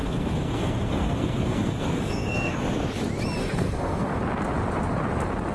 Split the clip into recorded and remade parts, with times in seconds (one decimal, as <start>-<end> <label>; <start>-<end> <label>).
0.0-2.6 remade; 2.6-3.4 recorded; 3.4-4.2 remade; 4.2-5.5 recorded